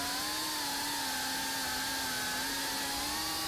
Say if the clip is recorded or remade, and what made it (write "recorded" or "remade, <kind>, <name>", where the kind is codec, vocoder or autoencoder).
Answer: recorded